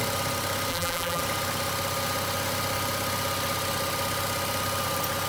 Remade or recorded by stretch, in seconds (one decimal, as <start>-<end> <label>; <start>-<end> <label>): 0.0-0.7 recorded; 0.7-1.2 remade; 1.2-5.3 recorded